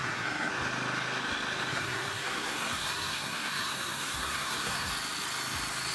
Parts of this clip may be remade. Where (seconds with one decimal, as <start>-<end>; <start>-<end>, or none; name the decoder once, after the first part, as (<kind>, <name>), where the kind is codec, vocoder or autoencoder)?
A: 0.0-0.5 (codec, SNAC); 1.7-4.9